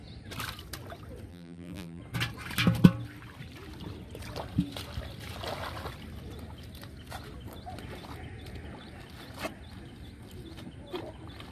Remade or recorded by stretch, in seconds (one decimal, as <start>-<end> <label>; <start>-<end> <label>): 0.0-1.3 recorded; 1.3-2.0 remade; 2.0-11.5 recorded